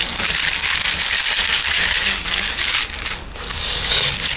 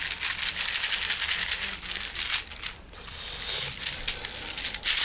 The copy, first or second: first